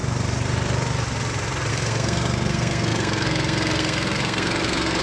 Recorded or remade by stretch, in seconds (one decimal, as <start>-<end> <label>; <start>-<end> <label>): 0.0-1.7 recorded; 1.7-5.0 remade